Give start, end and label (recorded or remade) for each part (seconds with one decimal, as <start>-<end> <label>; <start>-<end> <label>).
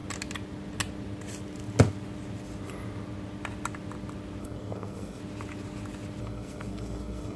0.0-4.4 recorded; 4.4-5.2 remade; 5.2-6.2 recorded; 6.2-7.4 remade